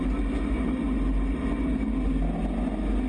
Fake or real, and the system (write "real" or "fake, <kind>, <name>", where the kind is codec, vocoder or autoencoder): real